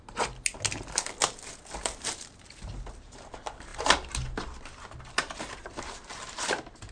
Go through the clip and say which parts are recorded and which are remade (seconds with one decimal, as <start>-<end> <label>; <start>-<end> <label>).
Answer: 0.0-6.9 recorded